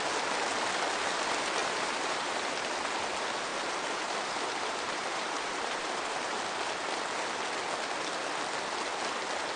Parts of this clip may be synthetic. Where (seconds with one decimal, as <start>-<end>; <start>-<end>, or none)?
1.6-2.5; 3.5-6.4